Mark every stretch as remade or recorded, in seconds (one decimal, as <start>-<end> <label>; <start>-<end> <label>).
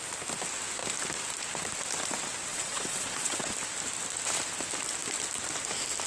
0.0-2.5 recorded; 2.5-3.5 remade; 3.5-6.1 recorded